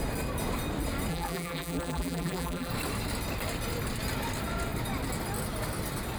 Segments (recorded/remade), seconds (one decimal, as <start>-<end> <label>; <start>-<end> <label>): 0.0-1.1 recorded; 1.1-2.7 remade; 2.7-6.2 recorded